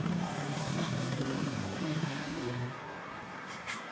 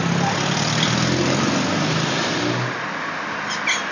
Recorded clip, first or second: second